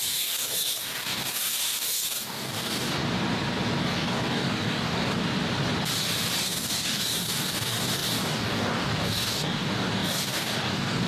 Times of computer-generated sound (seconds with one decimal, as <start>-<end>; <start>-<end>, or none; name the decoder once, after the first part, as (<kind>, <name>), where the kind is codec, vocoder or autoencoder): 0.0-3.0 (codec, DAC); 3.8-5.2; 6.4-11.1